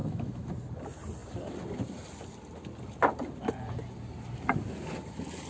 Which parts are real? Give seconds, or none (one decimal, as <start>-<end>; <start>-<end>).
0.5-5.5